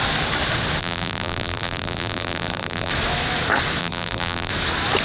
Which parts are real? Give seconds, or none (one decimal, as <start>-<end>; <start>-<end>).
0.0-0.8; 2.9-3.8; 4.5-5.0